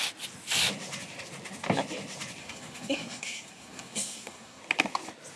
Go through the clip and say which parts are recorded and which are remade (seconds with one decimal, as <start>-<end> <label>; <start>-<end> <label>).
0.0-2.4 recorded; 2.4-4.6 remade; 4.6-5.4 recorded

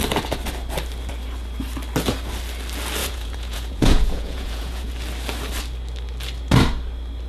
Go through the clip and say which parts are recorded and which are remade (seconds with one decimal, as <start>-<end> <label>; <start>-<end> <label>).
0.0-3.0 recorded; 3.0-4.9 remade; 4.9-7.3 recorded

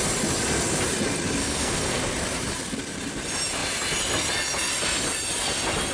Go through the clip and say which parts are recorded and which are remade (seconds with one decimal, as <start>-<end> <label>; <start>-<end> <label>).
0.0-1.4 recorded; 1.4-2.0 remade; 2.0-5.9 recorded

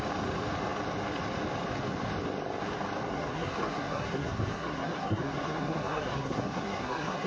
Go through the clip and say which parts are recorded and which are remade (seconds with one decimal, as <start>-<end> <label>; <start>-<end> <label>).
0.0-3.1 recorded; 3.1-7.3 remade

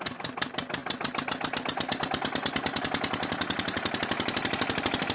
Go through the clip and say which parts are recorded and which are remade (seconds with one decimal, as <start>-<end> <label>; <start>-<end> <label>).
0.0-5.1 recorded

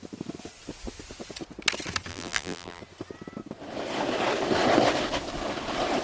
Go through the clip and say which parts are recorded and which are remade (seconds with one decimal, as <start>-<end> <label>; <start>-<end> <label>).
0.0-2.1 recorded; 2.1-2.8 remade; 2.8-6.0 recorded